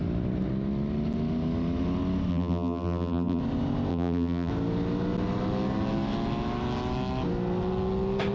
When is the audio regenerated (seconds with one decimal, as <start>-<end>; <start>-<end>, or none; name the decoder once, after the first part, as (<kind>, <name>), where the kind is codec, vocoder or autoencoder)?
2.3-3.4 (vocoder, BigVGAN v2); 3.9-4.5